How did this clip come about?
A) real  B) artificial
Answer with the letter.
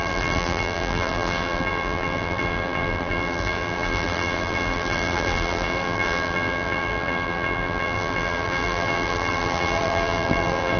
B